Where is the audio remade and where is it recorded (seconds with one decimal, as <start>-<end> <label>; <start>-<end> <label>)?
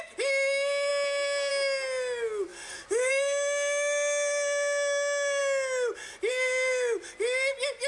0.0-7.9 recorded